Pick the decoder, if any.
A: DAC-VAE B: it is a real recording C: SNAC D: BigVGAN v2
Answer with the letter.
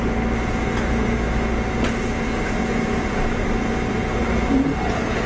B